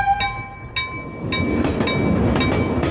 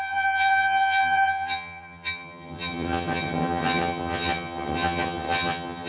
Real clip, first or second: first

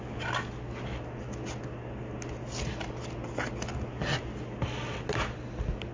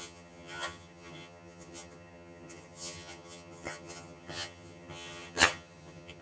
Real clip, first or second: first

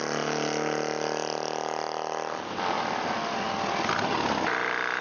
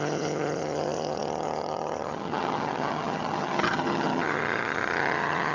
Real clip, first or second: first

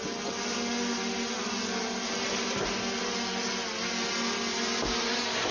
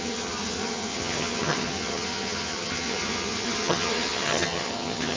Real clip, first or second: first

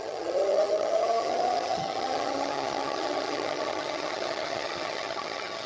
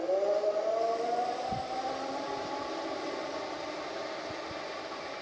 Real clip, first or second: second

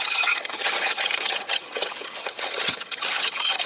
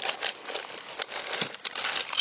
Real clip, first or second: second